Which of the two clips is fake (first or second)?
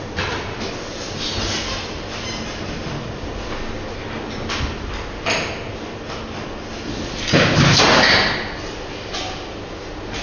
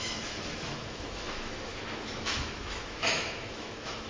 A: second